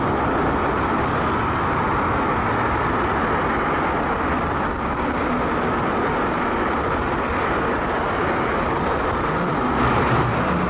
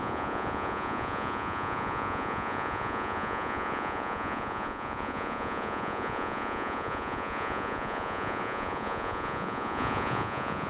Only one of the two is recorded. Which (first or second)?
first